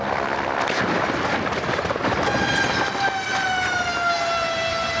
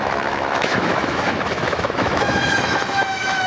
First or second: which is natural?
first